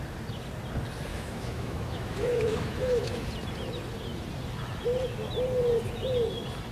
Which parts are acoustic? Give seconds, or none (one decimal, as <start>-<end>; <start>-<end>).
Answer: 0.0-1.1; 3.2-6.7